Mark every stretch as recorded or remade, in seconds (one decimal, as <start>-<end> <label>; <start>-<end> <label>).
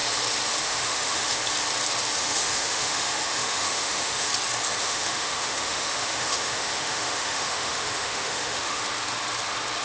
0.0-0.6 recorded; 0.6-1.4 remade; 1.4-2.2 recorded; 2.2-4.3 remade; 4.3-4.8 recorded; 4.8-8.8 remade; 8.8-9.8 recorded